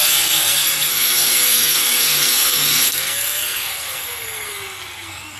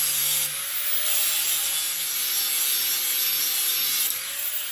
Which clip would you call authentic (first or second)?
second